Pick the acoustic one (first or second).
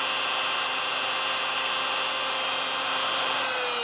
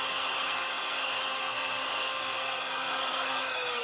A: first